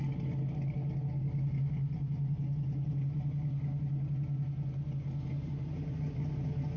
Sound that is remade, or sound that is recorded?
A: recorded